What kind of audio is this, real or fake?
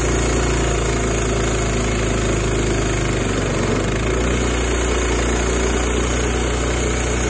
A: real